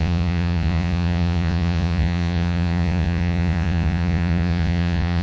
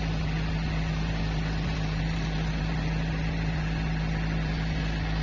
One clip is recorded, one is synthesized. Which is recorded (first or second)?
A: second